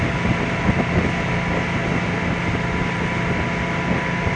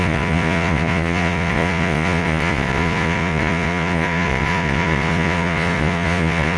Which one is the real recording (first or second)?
first